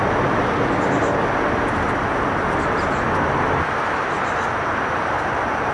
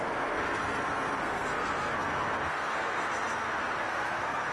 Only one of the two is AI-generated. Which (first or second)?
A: second